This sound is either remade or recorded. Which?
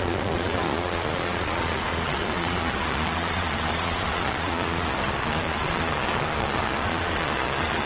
remade